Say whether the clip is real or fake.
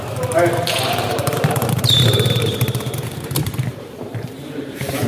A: fake